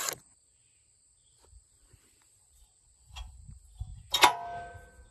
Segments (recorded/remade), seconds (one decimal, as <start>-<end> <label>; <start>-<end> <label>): 0.0-5.1 recorded